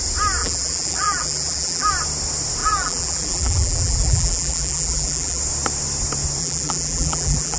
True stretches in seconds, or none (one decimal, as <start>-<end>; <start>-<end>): 0.0-0.4; 1.9-2.6; 5.4-6.4